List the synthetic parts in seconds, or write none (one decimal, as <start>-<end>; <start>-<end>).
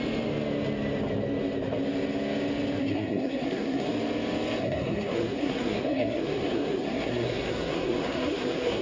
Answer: 2.8-3.9; 4.6-8.8